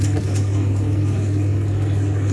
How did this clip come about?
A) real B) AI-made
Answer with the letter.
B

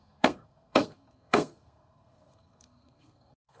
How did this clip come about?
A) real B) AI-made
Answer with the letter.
B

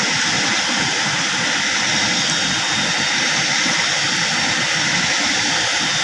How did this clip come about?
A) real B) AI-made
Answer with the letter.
A